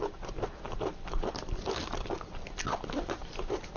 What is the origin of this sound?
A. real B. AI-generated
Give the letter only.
B